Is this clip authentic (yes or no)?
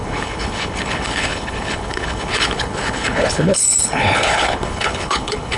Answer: no